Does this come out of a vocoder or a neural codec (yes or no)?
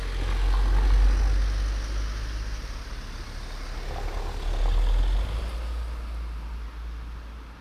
no